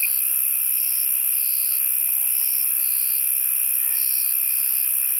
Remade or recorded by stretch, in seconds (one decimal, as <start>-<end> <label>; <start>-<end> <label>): 0.0-5.2 recorded